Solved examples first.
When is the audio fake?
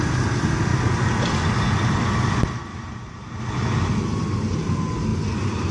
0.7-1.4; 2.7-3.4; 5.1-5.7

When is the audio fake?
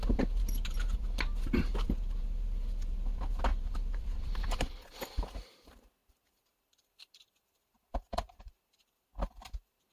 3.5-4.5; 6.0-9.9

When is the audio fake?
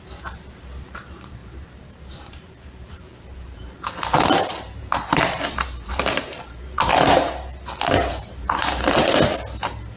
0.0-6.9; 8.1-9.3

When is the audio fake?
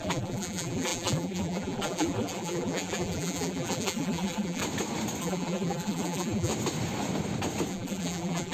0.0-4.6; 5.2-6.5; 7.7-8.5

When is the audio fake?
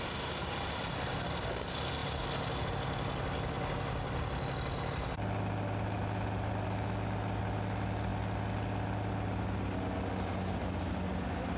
none